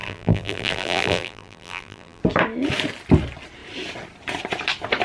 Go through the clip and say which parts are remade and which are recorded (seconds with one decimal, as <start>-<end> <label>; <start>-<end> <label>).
0.0-2.2 remade; 2.2-5.0 recorded